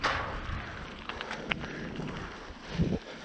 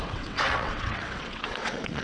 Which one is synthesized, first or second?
second